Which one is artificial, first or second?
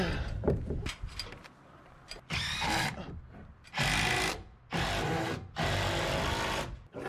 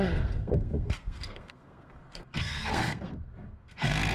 second